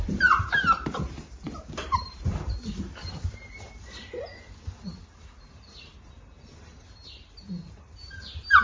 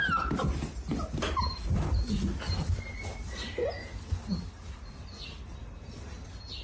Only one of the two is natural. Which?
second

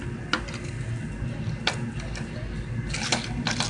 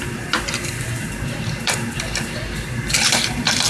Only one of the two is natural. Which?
first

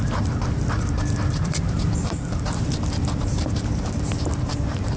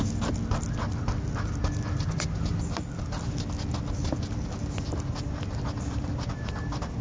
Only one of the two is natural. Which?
second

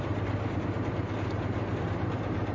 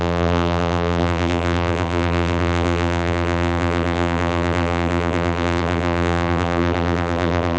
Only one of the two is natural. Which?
first